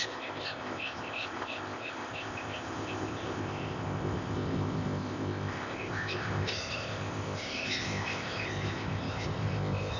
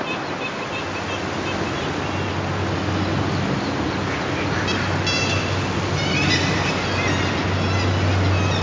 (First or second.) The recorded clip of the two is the second